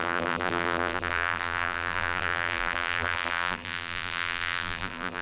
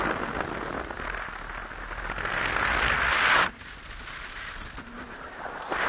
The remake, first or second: first